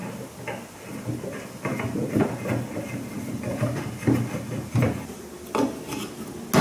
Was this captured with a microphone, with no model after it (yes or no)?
yes